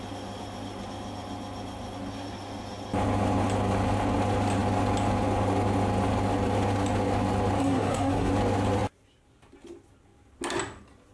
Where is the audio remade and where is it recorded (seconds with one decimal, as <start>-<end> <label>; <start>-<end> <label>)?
0.0-7.6 recorded; 7.6-8.3 remade; 8.3-11.1 recorded